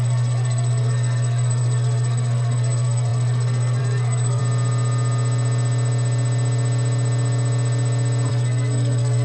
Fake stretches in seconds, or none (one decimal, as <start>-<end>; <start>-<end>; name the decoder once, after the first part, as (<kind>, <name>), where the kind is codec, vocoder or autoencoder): 0.0-4.4 (codec, SNAC); 8.3-9.2